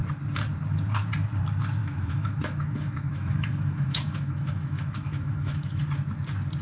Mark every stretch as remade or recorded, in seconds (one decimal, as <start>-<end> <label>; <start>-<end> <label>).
0.0-1.8 recorded; 1.8-5.8 remade; 5.8-6.6 recorded